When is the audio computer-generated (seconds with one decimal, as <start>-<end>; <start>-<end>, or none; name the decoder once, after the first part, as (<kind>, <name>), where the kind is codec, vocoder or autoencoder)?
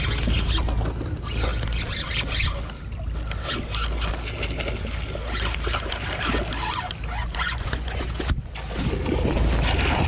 7.2-8.5 (vocoder, Vocos)